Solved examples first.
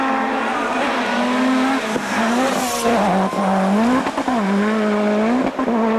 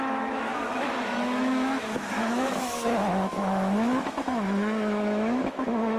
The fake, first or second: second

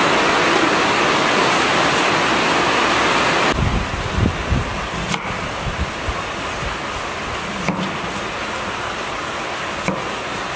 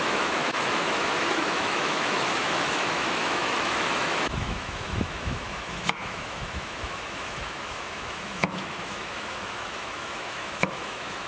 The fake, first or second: second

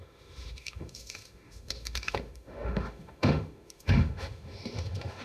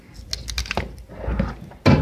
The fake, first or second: first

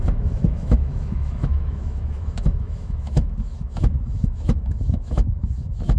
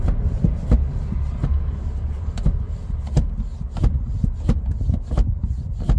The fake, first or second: first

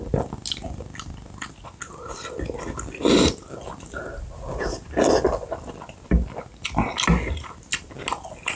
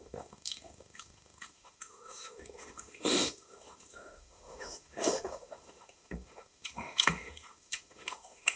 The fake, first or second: second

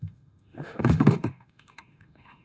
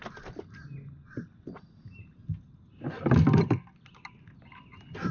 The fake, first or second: first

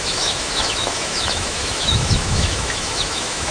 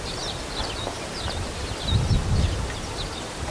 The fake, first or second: first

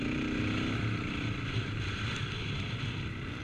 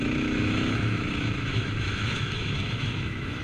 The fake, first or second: second